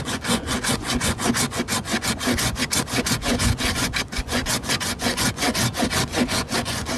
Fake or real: fake